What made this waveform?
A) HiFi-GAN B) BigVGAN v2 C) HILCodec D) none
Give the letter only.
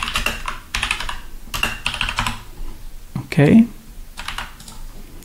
D